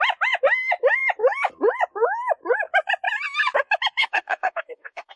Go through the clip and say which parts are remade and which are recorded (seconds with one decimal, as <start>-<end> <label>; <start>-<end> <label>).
0.0-4.0 recorded; 4.0-5.2 remade